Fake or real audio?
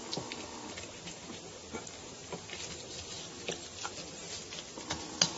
real